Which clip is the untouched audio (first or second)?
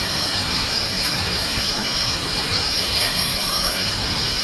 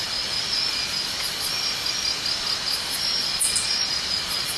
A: second